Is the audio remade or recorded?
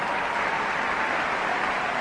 recorded